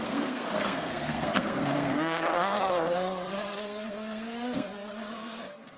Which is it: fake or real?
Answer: fake